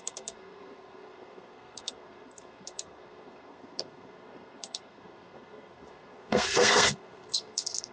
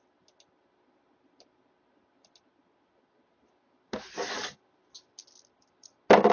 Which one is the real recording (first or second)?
second